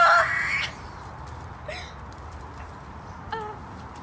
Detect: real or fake real